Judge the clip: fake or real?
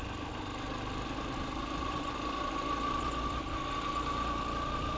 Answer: real